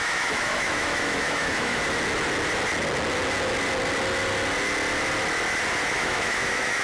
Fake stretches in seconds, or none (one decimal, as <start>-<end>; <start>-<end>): 0.0-1.8; 5.9-6.8